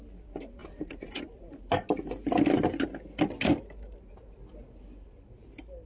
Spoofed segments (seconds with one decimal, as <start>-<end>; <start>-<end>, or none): none